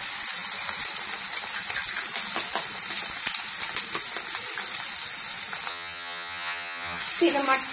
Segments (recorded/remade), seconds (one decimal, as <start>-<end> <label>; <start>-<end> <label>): 0.0-5.7 recorded; 5.7-7.0 remade; 7.0-7.7 recorded